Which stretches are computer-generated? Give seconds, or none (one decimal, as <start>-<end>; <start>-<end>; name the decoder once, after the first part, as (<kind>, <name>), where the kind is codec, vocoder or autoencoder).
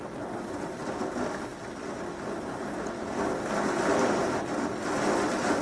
none